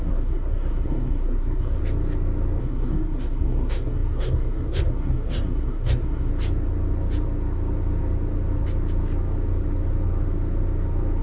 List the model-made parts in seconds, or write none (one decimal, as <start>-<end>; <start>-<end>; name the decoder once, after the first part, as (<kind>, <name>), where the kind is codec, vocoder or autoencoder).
0.0-1.8 (codec, SNAC); 2.6-6.3